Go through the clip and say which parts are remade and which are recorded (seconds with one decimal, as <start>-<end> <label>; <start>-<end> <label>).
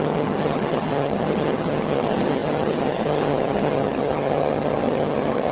0.0-5.5 remade